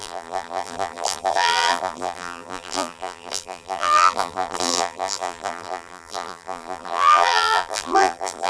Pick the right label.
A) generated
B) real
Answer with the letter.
A